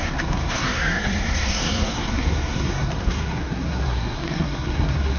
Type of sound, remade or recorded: remade